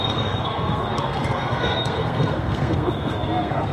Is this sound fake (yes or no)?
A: yes